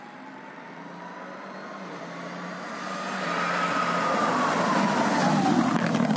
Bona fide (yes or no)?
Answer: yes